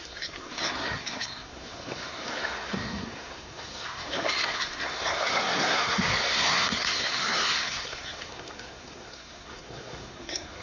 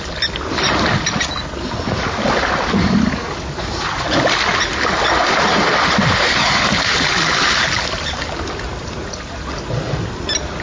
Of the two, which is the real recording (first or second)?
second